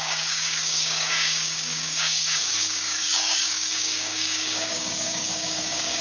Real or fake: fake